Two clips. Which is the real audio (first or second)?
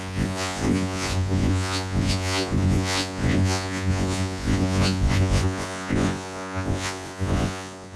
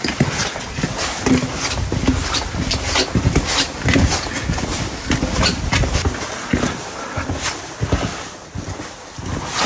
second